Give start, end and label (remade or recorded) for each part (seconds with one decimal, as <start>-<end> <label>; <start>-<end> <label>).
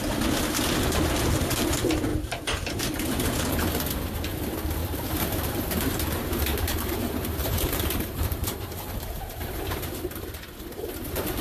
0.0-2.1 recorded; 2.1-2.8 remade; 2.8-4.8 recorded; 4.8-5.7 remade; 5.7-6.5 recorded; 6.5-9.6 remade; 9.6-11.4 recorded